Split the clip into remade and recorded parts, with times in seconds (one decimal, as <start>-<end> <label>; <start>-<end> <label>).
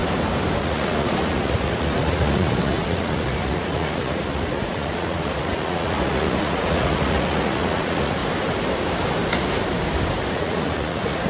0.0-0.6 recorded; 0.6-8.2 remade; 8.2-10.3 recorded; 10.3-11.3 remade